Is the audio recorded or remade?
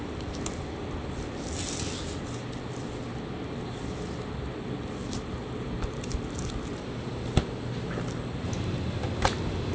recorded